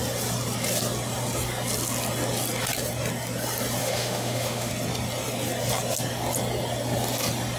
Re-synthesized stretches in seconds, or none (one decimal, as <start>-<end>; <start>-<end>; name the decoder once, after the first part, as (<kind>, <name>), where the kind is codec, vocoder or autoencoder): 3.8-4.7 (autoencoder, DAC-VAE)

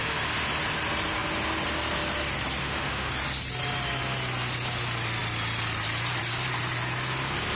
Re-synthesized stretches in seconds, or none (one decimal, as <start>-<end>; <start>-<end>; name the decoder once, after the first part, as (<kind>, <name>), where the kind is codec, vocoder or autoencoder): 2.6-3.1 (autoencoder, DAC-VAE)

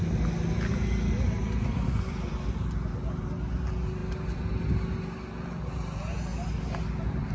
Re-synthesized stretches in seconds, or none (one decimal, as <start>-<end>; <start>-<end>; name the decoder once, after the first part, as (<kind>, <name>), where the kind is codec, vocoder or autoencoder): none

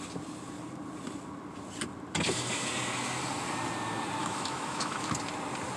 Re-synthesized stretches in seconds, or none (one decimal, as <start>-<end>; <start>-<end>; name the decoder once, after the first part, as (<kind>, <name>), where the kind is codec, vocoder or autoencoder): 4.2-5.1 (autoencoder, DAC-VAE)

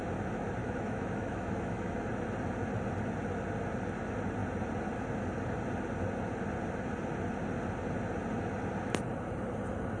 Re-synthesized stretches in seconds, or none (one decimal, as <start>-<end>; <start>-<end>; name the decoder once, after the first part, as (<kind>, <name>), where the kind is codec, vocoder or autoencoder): 0.6-2.0 (autoencoder, DAC-VAE)